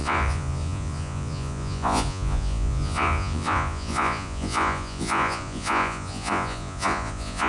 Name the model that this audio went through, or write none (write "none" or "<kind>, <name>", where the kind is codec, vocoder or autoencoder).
vocoder, Vocos